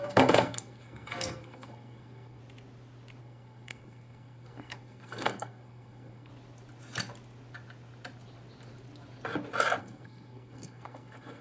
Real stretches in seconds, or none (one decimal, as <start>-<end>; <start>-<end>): 2.4-3.2; 6.3-9.8